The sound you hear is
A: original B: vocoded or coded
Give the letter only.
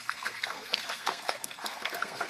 B